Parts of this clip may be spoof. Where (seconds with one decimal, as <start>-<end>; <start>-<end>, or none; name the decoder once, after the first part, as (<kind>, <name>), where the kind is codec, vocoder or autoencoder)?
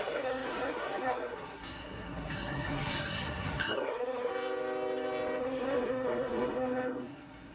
0.0-4.3 (codec, SNAC); 5.4-7.5